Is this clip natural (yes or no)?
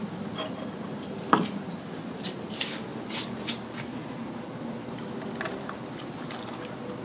yes